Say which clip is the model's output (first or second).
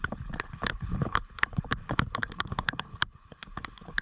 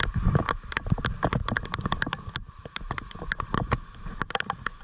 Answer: first